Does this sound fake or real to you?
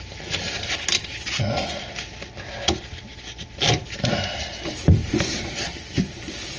real